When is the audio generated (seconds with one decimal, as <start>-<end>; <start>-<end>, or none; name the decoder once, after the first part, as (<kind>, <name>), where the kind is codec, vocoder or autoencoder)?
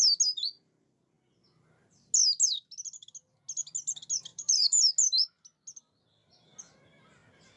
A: 4.3-4.9 (vocoder, BigVGAN v2)